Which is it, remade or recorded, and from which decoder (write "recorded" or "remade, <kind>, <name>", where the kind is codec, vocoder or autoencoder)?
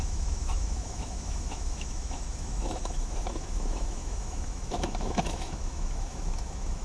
remade, autoencoder, DAC-VAE